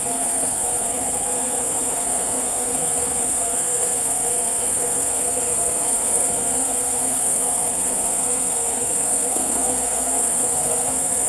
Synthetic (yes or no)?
yes